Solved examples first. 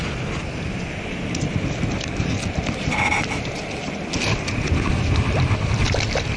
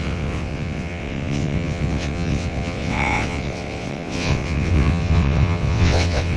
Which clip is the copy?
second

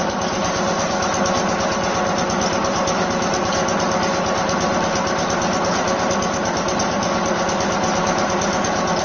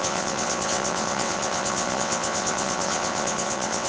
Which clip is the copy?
second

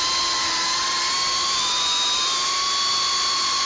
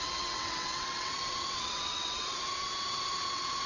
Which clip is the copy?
second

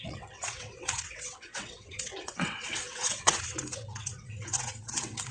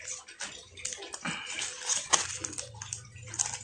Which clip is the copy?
first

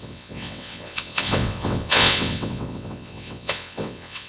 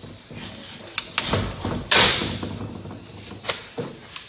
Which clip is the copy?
first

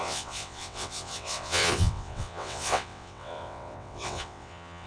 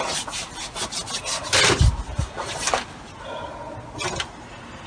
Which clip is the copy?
first